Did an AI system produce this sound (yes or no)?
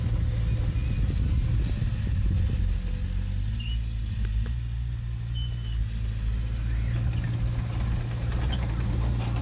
no